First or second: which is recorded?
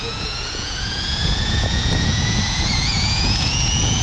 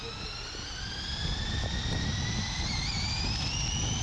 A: second